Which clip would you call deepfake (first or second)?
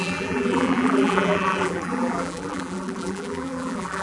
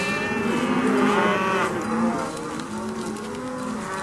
first